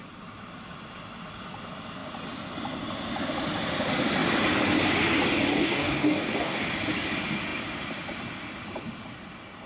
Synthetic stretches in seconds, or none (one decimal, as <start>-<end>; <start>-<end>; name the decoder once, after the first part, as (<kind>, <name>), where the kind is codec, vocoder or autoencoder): 5.5-6.6 (codec, DAC)